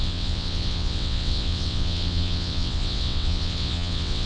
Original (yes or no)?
no